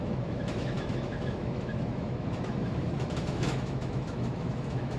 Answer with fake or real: fake